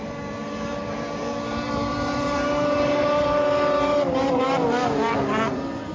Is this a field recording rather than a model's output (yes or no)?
yes